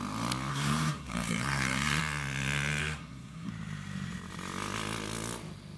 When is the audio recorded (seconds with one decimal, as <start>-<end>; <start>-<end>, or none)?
0.0-0.5; 2.0-2.8; 3.5-5.8